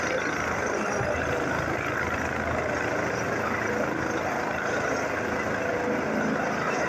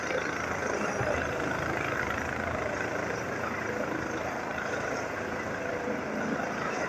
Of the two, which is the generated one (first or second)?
second